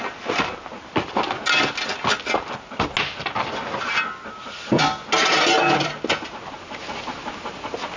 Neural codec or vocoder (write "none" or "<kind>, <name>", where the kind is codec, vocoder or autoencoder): none